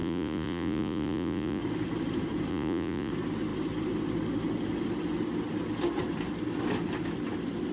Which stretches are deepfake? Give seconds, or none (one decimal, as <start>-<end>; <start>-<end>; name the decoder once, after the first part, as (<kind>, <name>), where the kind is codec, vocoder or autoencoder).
0.0-1.6 (vocoder, Vocos); 2.5-3.1